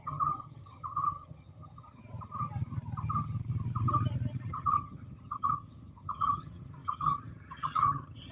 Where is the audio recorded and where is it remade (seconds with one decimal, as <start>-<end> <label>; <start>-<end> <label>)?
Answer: 0.0-2.0 remade; 2.0-4.5 recorded; 4.5-8.3 remade